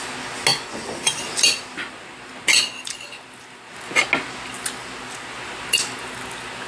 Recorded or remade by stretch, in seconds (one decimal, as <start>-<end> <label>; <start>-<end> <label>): 0.0-0.5 recorded; 0.5-1.2 remade; 1.2-6.7 recorded